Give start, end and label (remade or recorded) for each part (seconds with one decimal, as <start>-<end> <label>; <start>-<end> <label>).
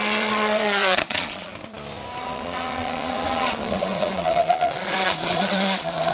0.0-1.5 remade; 1.5-2.2 recorded; 2.2-6.1 remade